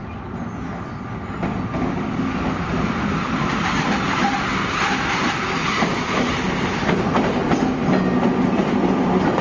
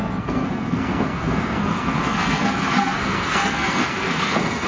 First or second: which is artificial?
second